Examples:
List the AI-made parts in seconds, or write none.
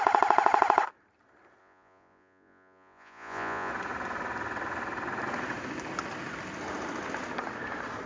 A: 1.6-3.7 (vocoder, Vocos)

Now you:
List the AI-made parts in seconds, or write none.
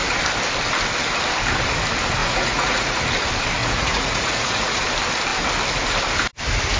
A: 2.2-3.0 (vocoder, Vocos); 3.6-4.8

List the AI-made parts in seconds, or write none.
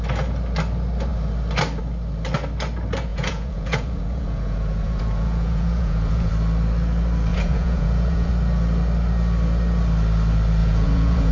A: 3.1-6.3 (vocoder, Vocos); 7.3-8.3; 10.6-11.3